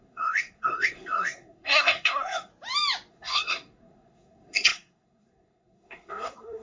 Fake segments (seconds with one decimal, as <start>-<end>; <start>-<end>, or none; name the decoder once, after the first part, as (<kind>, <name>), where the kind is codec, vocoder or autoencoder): 0.0-2.5 (codec, SNAC); 3.1-6.6